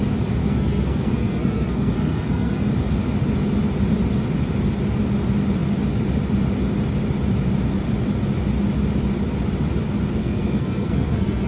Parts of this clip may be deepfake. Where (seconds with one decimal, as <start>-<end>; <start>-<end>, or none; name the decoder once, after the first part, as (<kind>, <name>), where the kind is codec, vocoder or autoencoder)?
0.4-2.7 (codec, SNAC); 10.2-11.5